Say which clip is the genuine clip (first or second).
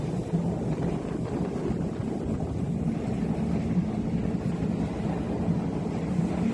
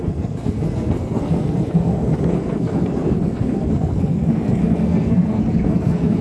first